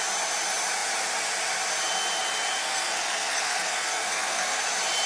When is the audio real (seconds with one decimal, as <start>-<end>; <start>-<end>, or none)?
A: 0.0-2.6; 4.6-5.1